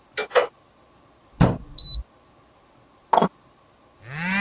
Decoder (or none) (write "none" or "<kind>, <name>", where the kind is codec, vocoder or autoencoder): none